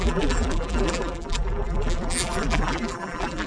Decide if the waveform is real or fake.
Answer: fake